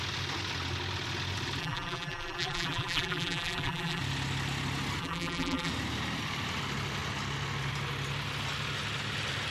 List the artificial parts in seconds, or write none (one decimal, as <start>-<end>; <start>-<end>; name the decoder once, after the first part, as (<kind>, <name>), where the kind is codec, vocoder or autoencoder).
1.6-4.0 (vocoder, BigVGAN v2); 5.0-5.7